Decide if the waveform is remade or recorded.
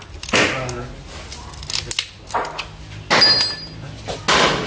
recorded